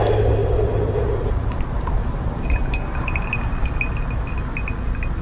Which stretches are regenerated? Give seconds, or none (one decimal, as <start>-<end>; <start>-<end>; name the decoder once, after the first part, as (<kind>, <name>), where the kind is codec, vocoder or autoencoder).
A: 0.4-3.5 (vocoder, BigVGAN v2)